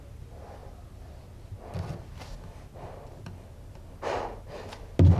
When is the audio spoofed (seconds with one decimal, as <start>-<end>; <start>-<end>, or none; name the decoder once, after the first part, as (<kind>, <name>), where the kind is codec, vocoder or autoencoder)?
none